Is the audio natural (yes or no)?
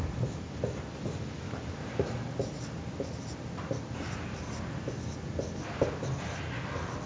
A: yes